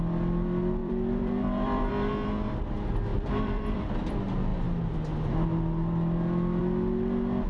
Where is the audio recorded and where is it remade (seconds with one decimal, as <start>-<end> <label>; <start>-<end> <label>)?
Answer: 0.0-0.8 recorded; 0.8-1.9 remade; 1.9-3.1 recorded; 3.1-4.1 remade; 4.1-7.5 recorded